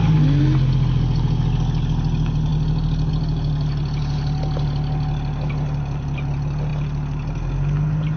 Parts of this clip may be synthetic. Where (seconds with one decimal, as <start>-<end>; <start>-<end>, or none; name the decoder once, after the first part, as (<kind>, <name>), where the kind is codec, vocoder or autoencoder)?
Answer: none